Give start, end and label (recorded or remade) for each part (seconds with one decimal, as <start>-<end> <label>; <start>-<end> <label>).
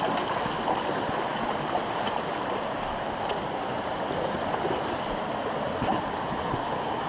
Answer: 0.0-7.1 recorded